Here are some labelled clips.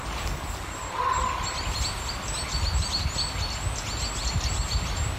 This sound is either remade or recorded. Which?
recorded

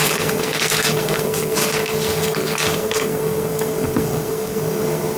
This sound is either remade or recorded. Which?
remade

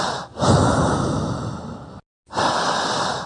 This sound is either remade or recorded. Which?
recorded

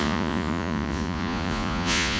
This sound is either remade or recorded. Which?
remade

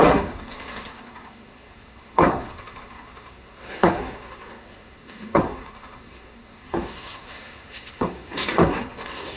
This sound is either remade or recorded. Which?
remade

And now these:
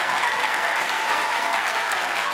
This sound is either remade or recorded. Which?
remade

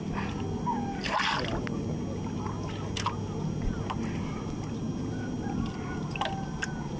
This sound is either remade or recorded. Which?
recorded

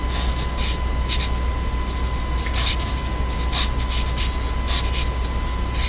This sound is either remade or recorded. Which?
recorded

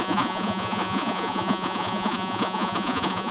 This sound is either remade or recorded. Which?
remade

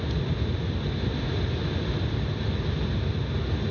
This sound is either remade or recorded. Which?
recorded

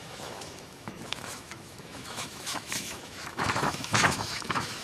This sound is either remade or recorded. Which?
remade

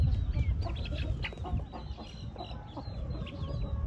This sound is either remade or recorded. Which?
recorded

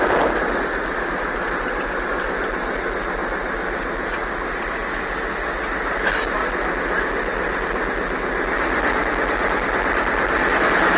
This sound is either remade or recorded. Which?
recorded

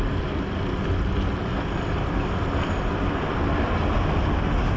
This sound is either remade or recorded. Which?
recorded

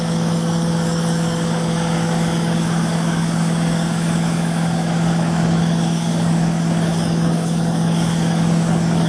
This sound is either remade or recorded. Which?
remade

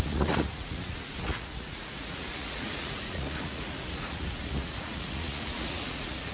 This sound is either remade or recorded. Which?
remade